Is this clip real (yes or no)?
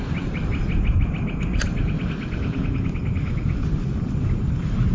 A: yes